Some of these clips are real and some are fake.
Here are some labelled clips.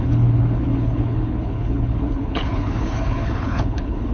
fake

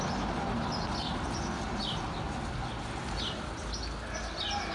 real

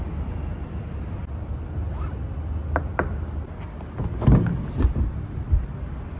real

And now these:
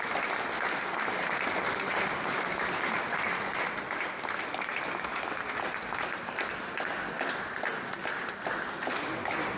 real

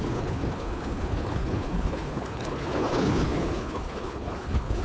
fake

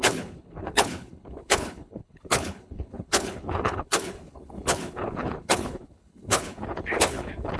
fake